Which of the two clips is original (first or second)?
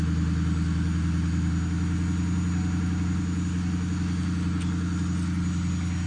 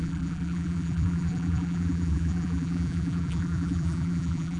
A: first